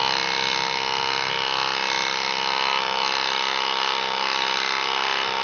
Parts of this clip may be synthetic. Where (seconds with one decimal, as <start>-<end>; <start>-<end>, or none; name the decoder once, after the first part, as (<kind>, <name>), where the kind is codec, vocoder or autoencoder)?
none